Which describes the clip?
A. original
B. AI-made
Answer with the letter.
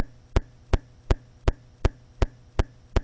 A